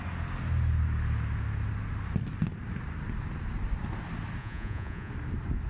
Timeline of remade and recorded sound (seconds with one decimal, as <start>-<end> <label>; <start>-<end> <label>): 0.0-4.4 recorded; 4.4-5.1 remade; 5.1-5.7 recorded